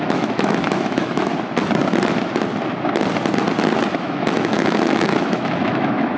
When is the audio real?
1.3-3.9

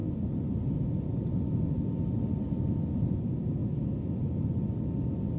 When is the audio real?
0.0-5.4

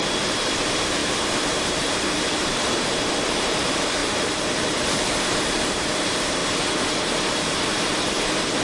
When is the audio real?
6.4-8.2